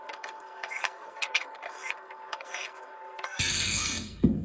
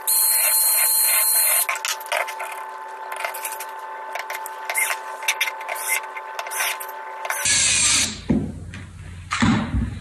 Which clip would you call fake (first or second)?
first